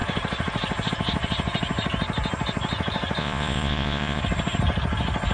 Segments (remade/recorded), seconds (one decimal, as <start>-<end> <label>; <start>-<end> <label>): 0.0-3.2 recorded; 3.2-4.2 remade; 4.2-5.3 recorded